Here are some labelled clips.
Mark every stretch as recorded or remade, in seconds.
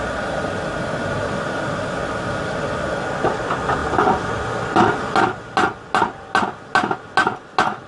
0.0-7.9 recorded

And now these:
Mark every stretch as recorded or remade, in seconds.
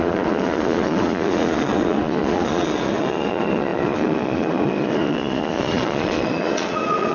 0.0-7.1 remade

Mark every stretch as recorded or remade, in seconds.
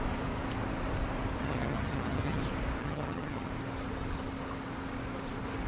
0.0-1.4 recorded; 1.4-2.4 remade; 2.4-2.8 recorded; 2.8-3.5 remade; 3.5-5.7 recorded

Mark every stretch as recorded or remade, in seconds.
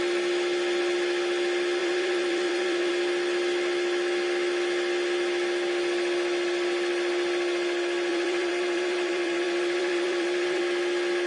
0.0-1.8 recorded; 1.8-2.9 remade; 2.9-8.1 recorded; 8.1-10.6 remade; 10.6-11.3 recorded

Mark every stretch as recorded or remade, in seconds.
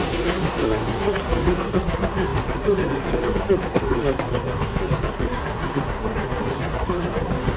0.0-7.6 remade